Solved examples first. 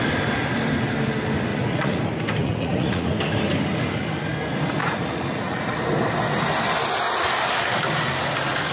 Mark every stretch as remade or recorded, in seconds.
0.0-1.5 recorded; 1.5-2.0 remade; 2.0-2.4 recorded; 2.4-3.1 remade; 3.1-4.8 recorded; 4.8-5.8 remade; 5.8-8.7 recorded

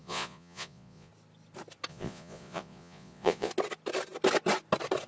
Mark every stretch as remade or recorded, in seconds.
0.0-1.1 remade; 1.1-1.9 recorded; 1.9-3.5 remade; 3.5-5.1 recorded

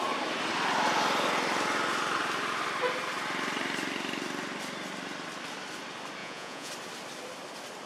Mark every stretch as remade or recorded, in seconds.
0.0-6.2 recorded; 6.2-6.7 remade; 6.7-7.9 recorded

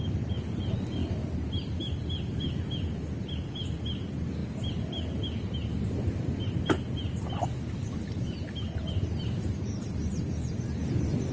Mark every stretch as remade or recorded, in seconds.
0.0-11.3 recorded

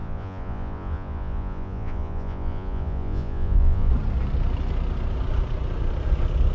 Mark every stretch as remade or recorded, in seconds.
0.0-3.9 remade; 3.9-6.5 recorded